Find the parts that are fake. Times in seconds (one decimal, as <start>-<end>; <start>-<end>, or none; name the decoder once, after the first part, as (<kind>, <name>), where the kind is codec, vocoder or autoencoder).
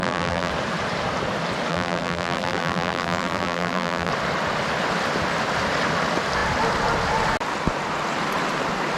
0.0-0.5 (vocoder, BigVGAN v2); 1.7-4.1